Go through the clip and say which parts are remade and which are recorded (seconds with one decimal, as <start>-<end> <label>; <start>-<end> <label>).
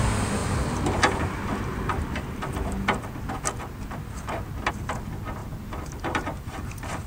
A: 0.0-5.4 recorded; 5.4-7.1 remade